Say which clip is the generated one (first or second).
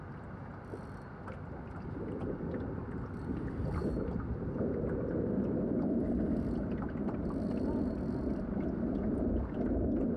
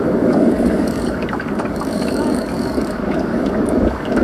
second